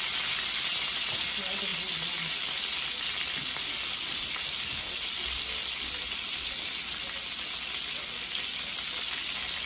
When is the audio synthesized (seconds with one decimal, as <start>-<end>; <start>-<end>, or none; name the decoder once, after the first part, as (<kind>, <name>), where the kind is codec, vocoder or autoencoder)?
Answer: none